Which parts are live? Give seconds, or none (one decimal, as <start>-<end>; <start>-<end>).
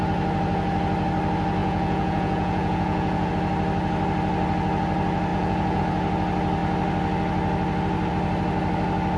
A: 0.0-1.6; 3.3-5.3; 5.8-9.2